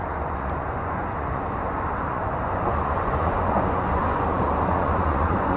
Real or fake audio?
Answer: fake